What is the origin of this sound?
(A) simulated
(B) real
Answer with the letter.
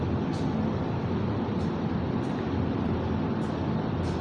B